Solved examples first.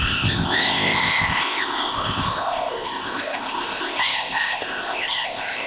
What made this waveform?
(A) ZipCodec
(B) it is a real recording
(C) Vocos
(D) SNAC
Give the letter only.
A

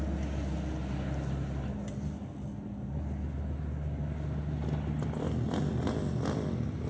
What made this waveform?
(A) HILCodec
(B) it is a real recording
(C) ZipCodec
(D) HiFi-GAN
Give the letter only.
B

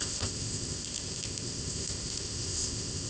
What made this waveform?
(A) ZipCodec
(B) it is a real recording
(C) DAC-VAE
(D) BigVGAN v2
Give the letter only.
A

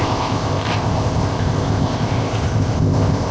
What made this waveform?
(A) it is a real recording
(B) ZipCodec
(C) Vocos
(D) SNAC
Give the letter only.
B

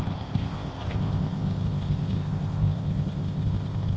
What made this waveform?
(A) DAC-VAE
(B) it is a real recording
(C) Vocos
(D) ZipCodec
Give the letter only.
D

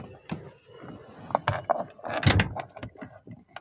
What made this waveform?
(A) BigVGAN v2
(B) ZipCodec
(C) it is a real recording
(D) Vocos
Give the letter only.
C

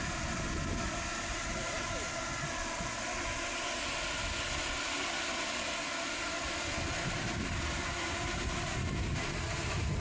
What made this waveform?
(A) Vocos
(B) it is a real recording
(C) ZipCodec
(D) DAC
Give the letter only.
B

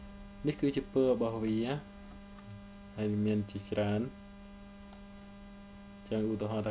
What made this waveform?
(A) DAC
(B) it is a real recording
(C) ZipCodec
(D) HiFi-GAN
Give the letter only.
B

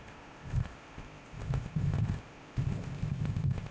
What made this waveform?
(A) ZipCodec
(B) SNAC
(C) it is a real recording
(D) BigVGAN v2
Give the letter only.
A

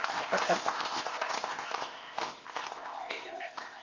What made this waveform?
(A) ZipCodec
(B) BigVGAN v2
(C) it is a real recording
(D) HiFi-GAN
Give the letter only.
A